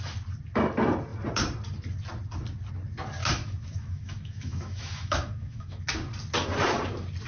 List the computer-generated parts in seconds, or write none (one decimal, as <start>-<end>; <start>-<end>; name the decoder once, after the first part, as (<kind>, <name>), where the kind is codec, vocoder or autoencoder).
3.2-5.8 (autoencoder, DAC-VAE)